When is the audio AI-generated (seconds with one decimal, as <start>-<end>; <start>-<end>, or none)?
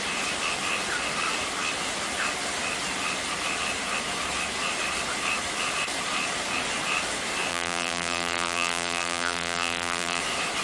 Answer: 7.5-10.2